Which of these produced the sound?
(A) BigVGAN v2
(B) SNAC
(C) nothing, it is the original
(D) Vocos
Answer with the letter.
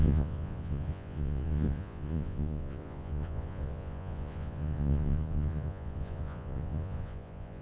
D